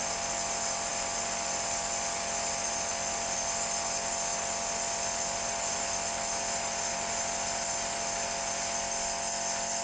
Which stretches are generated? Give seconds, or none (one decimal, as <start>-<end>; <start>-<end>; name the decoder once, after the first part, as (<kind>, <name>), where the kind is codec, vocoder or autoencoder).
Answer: none